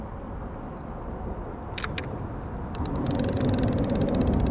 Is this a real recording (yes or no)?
yes